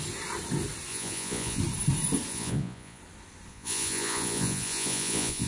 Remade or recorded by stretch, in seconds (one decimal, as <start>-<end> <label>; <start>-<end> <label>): 0.0-0.9 recorded; 0.9-1.6 remade; 1.6-2.3 recorded; 2.3-3.0 remade; 3.0-3.5 recorded; 3.5-5.5 remade